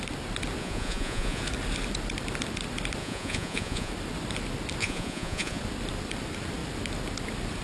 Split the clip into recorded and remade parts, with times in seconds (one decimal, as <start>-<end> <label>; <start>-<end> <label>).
0.0-0.6 recorded; 0.6-1.4 remade; 1.4-3.0 recorded; 3.0-3.9 remade; 3.9-4.8 recorded; 4.8-5.6 remade; 5.6-7.6 recorded